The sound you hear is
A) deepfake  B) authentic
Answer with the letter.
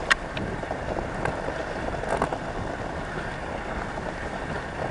B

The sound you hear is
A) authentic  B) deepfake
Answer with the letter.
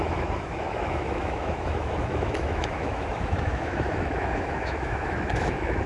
B